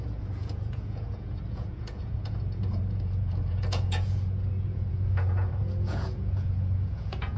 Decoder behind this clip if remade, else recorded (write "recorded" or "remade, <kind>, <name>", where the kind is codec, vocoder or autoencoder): remade, vocoder, Vocos